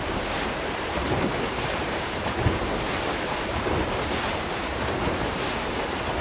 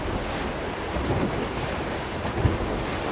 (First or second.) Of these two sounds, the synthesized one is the first